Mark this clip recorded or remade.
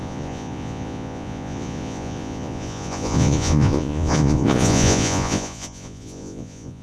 remade